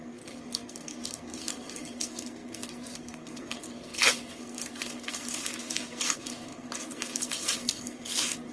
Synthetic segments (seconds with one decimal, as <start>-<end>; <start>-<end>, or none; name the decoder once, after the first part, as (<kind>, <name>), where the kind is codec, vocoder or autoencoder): 0.0-8.5 (codec, SNAC)